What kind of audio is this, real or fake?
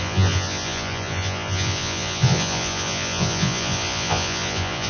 fake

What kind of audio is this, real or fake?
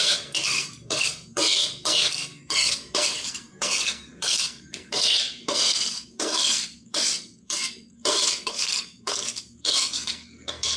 fake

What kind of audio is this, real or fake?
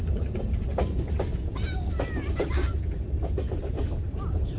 real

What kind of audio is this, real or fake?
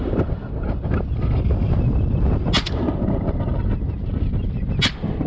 real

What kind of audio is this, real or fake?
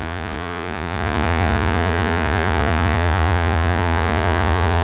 fake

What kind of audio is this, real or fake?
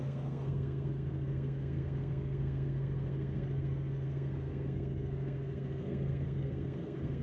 fake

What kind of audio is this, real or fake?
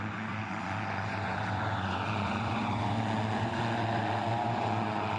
fake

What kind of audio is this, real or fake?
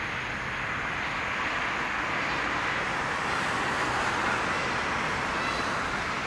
real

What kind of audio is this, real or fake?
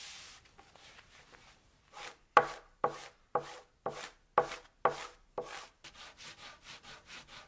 real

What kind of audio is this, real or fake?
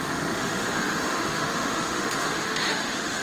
fake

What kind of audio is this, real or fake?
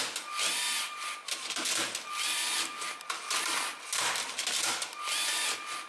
real